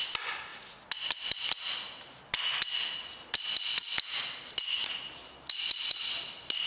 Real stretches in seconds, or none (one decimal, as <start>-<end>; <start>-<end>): 0.0-6.7